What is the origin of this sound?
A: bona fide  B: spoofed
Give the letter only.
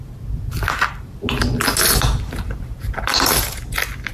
A